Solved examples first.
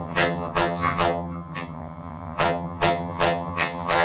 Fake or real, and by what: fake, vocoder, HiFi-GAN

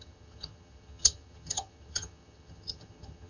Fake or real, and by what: fake, vocoder, HiFi-GAN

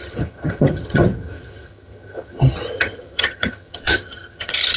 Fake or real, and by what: fake, vocoder, HiFi-GAN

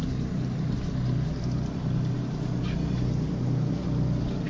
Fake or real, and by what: real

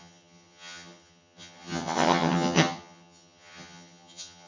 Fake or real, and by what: fake, vocoder, HiFi-GAN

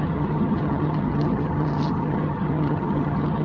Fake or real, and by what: fake, vocoder, HiFi-GAN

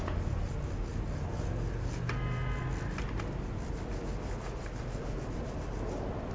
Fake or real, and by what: real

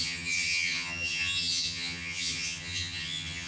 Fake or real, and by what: fake, vocoder, HiFi-GAN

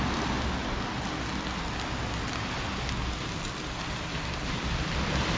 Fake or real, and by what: real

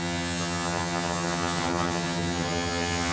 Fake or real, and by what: fake, vocoder, HiFi-GAN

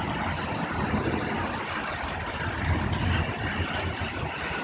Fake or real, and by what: real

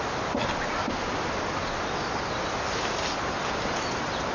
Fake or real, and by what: real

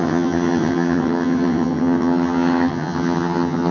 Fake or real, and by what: fake, vocoder, HiFi-GAN